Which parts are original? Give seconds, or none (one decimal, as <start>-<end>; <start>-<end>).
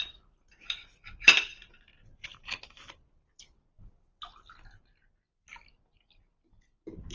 0.0-7.1